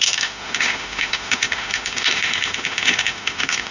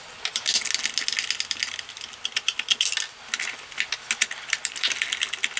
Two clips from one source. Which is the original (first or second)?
second